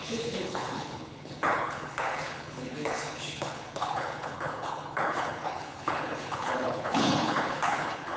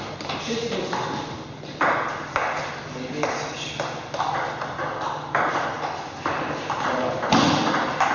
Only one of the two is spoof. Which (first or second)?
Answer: first